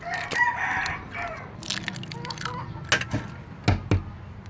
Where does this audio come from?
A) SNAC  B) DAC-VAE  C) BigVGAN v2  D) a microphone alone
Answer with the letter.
D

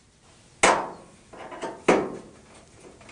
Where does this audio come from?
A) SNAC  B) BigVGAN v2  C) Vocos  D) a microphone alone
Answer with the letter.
D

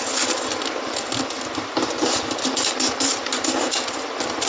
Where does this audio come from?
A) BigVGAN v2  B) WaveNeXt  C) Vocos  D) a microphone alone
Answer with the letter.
A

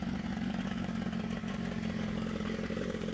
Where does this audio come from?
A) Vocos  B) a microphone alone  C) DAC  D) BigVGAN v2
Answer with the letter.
C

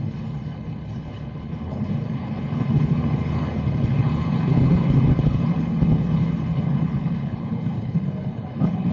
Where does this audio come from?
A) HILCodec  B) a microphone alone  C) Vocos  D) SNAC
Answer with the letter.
A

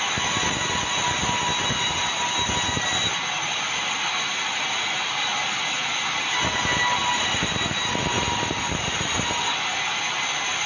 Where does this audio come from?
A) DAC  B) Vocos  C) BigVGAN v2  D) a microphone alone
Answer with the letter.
D